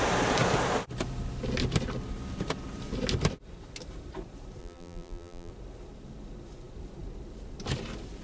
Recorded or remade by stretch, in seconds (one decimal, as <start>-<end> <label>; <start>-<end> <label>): 0.0-4.6 recorded; 4.6-5.5 remade; 5.5-8.2 recorded